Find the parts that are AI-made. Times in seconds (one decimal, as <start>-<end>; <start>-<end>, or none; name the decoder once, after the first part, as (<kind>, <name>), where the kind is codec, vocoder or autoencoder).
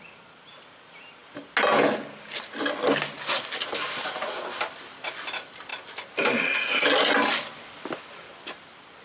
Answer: none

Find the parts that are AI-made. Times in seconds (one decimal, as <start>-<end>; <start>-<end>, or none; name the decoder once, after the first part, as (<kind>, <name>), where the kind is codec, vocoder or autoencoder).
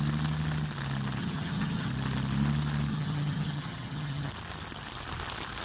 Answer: 1.2-1.9 (vocoder, HiFi-GAN); 2.9-4.3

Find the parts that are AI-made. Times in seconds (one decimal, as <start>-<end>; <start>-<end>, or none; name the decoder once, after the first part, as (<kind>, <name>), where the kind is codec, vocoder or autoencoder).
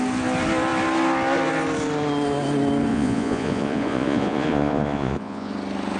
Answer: 2.9-5.5 (vocoder, Vocos)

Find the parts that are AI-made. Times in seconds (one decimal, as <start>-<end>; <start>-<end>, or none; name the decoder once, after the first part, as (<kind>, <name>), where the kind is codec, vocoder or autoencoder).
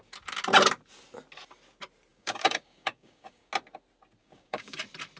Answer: 2.1-3.5 (codec, DAC); 4.2-4.8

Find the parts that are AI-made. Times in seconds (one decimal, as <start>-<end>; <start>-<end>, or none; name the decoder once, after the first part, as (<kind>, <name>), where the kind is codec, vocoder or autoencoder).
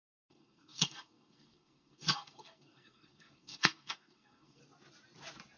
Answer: 0.0-4.6 (codec, SNAC)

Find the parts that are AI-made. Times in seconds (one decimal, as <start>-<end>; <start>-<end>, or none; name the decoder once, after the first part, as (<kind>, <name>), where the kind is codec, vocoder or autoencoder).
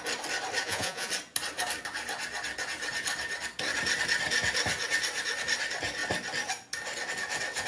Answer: 0.6-1.1 (vocoder, Vocos)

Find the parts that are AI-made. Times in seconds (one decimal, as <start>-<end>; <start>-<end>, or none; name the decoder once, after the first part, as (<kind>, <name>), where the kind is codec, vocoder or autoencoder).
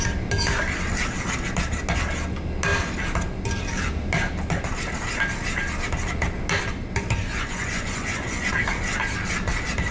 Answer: 7.3-8.5 (vocoder, Vocos)